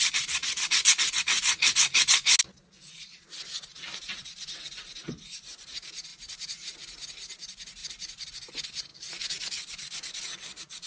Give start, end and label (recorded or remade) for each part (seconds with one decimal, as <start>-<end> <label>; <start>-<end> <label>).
0.0-7.8 recorded; 7.8-8.3 remade; 8.3-10.9 recorded